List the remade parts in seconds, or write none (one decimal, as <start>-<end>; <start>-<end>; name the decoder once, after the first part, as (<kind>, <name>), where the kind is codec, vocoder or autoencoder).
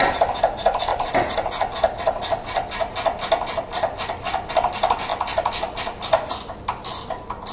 none